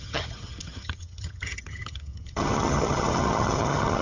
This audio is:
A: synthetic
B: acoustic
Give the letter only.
A